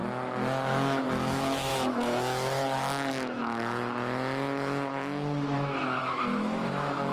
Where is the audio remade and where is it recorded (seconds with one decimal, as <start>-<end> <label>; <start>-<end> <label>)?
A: 0.0-1.0 recorded; 1.0-7.1 remade